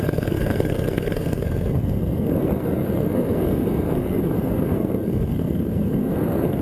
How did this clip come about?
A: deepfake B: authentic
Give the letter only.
A